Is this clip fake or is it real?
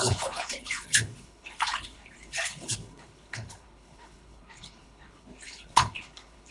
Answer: fake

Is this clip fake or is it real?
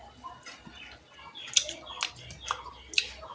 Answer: real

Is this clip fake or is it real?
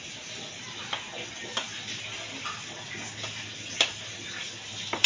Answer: real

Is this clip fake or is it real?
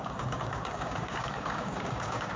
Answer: fake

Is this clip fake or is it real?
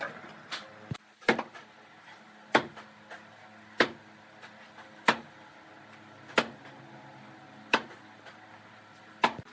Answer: real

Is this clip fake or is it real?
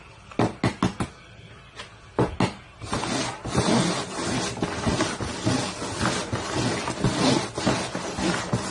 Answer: real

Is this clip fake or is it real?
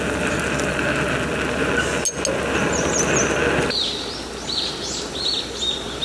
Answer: real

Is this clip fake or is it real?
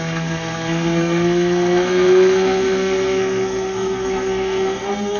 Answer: fake